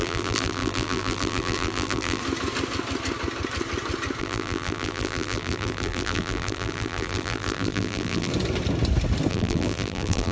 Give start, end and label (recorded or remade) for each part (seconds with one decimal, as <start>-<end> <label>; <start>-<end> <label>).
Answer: 0.0-2.2 remade; 2.2-4.2 recorded; 4.2-8.3 remade; 8.3-9.3 recorded; 9.3-10.3 remade